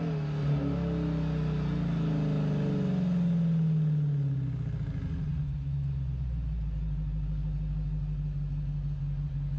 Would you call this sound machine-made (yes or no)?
no